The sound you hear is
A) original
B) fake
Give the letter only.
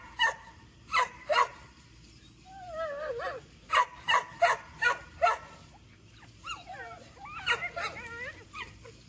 A